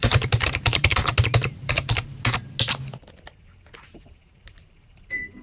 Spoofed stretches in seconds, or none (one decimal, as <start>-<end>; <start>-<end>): 0.0-1.0; 1.6-2.1; 3.3-5.4